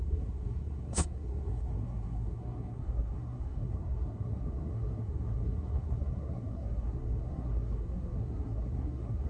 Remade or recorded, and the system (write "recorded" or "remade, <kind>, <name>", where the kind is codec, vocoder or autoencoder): remade, codec, SNAC